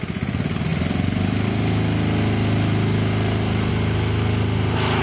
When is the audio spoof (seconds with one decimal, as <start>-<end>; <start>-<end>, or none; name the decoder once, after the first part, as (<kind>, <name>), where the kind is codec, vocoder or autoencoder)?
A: none